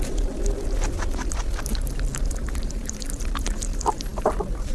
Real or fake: real